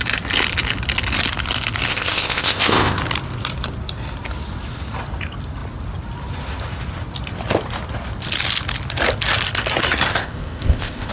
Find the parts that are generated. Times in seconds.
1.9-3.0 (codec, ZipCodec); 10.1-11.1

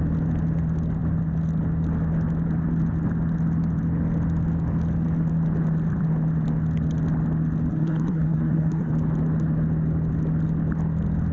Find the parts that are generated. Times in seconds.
7.7-8.9 (codec, SNAC)

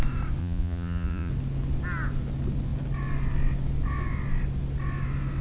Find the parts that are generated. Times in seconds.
0.4-1.3 (vocoder, Vocos)

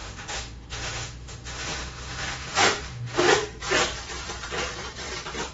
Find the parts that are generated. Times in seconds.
0.0-3.3 (autoencoder, DAC-VAE)